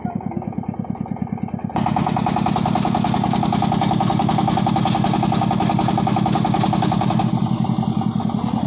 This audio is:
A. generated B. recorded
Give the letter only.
B